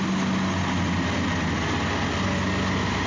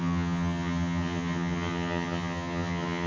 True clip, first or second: first